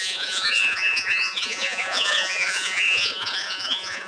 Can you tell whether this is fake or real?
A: fake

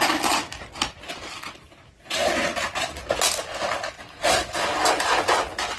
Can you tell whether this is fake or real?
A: real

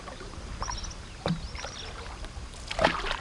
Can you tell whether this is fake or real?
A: real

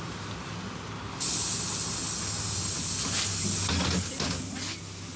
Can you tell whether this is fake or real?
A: real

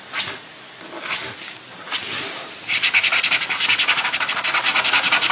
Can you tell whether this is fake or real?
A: real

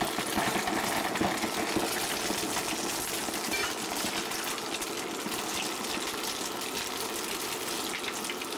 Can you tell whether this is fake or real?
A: real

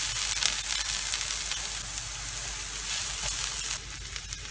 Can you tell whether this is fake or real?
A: real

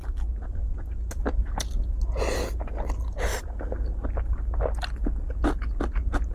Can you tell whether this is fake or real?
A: real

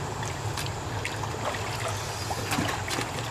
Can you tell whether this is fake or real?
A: real